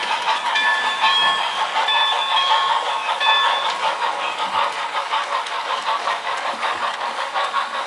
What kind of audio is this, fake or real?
fake